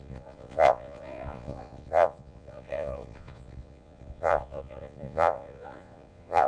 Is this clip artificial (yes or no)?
yes